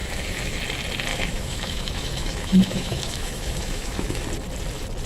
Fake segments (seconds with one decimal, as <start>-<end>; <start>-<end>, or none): 0.0-0.6; 1.1-4.2